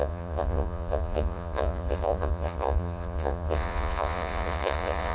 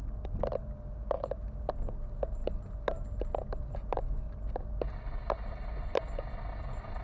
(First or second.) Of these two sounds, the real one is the second